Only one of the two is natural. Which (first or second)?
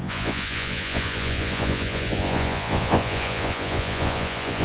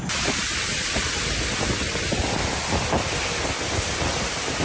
second